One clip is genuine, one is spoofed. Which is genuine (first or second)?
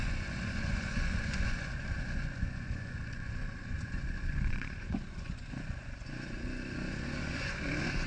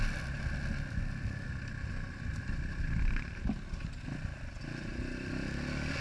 second